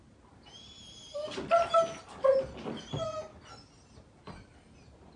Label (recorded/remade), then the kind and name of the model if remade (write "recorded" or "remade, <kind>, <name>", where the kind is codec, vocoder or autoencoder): recorded